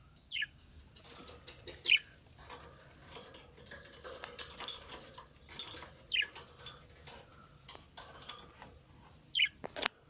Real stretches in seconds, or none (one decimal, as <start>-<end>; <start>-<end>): 0.8-10.1